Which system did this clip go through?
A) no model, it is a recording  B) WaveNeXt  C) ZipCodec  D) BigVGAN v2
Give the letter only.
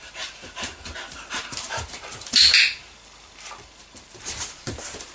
D